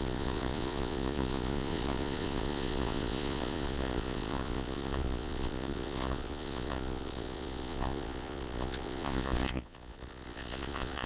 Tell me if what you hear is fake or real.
fake